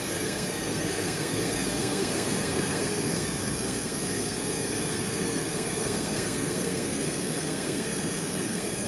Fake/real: fake